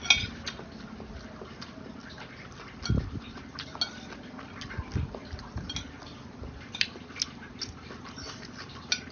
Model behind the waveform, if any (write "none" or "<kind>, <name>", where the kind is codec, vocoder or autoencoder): none